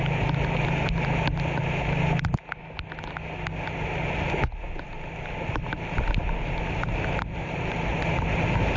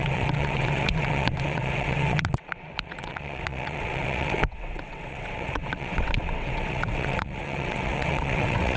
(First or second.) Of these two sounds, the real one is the first